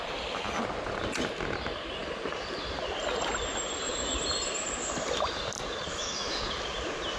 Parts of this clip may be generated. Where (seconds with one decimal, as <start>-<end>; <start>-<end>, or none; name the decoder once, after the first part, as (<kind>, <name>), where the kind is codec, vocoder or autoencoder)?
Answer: 5.9-6.4 (autoencoder, DAC-VAE)